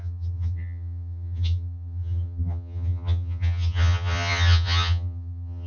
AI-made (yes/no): yes